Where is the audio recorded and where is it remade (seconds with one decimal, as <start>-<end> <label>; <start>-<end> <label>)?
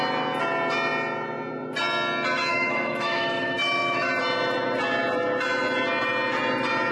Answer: 0.0-2.5 recorded; 2.5-4.1 remade; 4.1-6.9 recorded